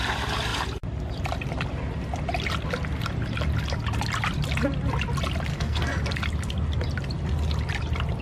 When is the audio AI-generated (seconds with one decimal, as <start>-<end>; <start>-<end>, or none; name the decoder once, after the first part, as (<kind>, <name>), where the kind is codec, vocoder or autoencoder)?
5.5-6.0 (codec, SNAC)